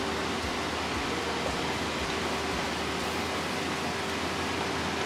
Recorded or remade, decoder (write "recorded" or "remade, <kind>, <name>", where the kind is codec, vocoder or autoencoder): recorded